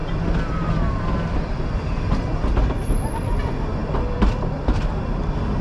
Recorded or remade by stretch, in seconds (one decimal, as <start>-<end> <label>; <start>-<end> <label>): 0.0-5.6 recorded